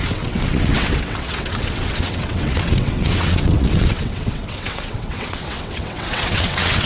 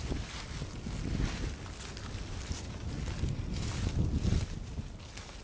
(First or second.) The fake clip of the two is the first